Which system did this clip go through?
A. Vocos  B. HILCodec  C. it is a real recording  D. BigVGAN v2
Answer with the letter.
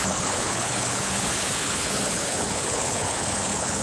B